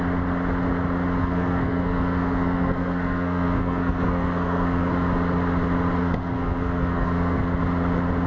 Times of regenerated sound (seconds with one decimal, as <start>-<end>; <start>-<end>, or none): 1.2-4.9; 6.0-7.6